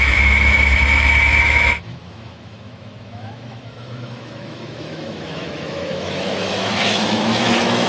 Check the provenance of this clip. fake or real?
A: fake